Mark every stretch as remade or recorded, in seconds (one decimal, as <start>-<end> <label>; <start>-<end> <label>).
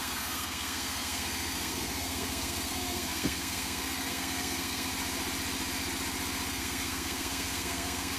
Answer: 0.0-4.9 remade; 4.9-6.5 recorded; 6.5-8.2 remade